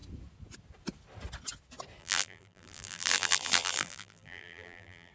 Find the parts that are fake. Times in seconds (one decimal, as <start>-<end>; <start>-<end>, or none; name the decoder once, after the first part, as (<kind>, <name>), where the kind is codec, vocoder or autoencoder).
2.0-5.1 (vocoder, BigVGAN v2)